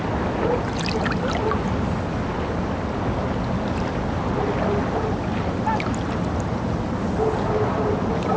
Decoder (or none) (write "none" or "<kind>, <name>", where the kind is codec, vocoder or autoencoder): none